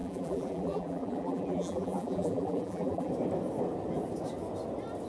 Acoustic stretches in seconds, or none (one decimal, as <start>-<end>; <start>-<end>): 3.1-5.1